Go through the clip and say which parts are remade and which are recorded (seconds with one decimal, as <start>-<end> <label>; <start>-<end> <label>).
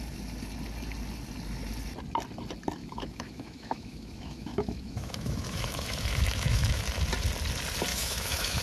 0.0-2.8 recorded; 2.8-6.8 remade; 6.8-7.9 recorded; 7.9-8.6 remade